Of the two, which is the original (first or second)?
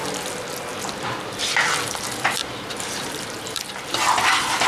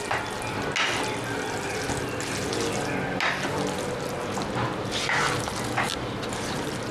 second